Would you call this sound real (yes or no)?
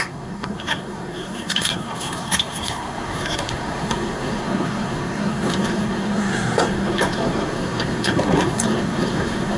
no